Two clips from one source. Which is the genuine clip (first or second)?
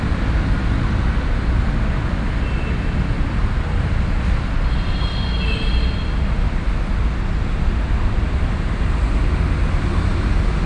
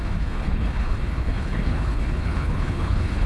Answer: first